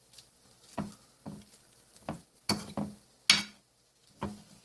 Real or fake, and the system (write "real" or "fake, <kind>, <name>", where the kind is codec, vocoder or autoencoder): real